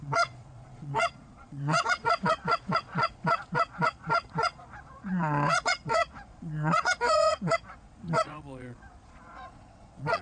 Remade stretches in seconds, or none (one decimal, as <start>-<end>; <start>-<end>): 0.0-10.2